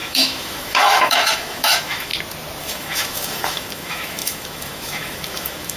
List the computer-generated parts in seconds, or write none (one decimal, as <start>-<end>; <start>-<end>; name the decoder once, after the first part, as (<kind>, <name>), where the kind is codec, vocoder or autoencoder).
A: 0.0-2.1 (autoencoder, DAC-VAE); 2.6-5.8